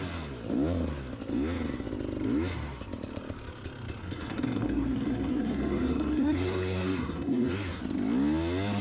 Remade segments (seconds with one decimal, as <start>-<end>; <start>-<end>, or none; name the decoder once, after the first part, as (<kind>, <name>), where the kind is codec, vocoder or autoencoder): 4.0-7.8 (codec, SNAC)